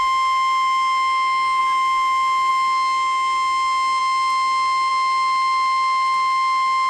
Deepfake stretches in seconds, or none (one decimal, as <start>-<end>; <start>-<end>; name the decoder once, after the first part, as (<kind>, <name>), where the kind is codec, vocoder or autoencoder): none